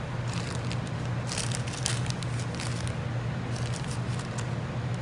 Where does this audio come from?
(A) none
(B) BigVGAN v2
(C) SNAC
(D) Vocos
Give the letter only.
A